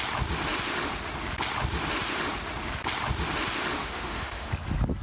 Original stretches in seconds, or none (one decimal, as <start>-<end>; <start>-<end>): 0.0-3.8; 4.5-5.0